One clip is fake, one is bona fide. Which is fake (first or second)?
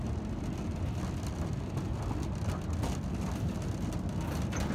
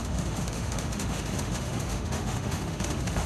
second